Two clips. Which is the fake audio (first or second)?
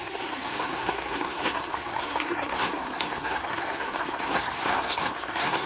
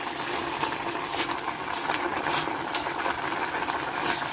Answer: first